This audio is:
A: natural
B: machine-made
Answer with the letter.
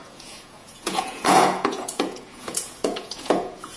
B